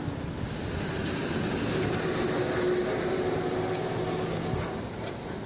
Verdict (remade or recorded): recorded